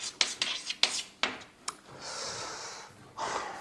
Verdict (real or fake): real